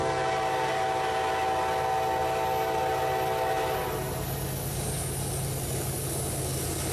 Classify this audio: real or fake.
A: real